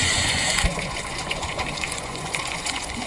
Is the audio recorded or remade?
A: remade